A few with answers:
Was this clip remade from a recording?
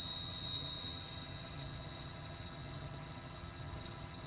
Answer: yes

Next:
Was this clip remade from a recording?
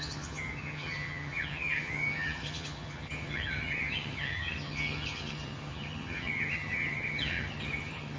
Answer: yes